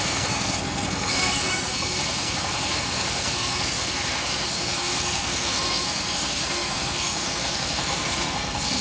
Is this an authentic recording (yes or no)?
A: no